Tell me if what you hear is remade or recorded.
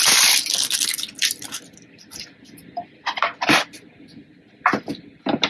remade